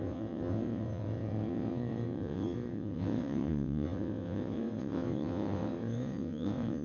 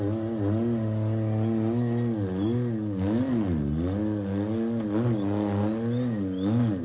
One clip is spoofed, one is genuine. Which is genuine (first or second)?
second